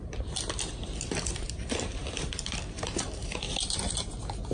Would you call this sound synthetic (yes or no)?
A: yes